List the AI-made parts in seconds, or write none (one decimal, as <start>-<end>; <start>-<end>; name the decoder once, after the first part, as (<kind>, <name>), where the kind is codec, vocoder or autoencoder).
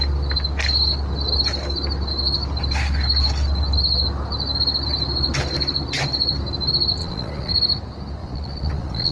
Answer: 7.0-7.5 (vocoder, Vocos); 8.2-9.1